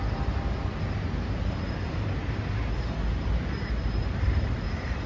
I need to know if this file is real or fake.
fake